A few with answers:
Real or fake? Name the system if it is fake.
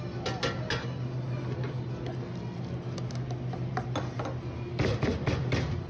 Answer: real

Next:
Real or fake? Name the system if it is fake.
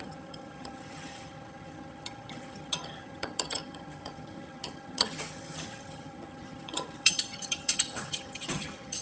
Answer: fake, vocoder, HiFi-GAN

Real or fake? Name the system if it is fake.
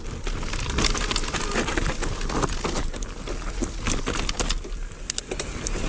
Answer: real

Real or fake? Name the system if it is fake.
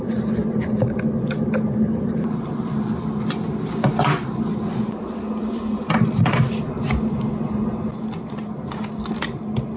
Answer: real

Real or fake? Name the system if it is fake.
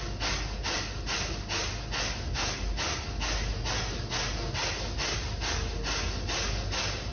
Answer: real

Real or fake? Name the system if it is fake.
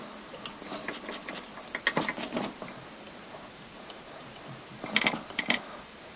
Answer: real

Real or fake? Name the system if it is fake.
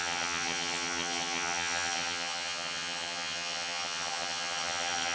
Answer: fake, vocoder, HiFi-GAN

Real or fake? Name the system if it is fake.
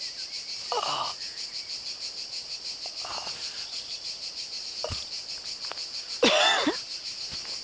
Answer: real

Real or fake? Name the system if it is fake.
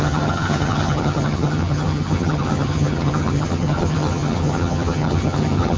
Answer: fake, vocoder, HiFi-GAN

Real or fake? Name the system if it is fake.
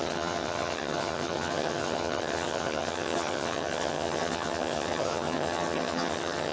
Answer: fake, vocoder, HiFi-GAN